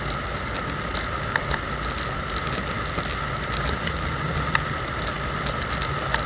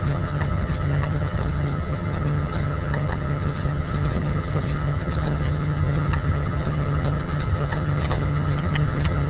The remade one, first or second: second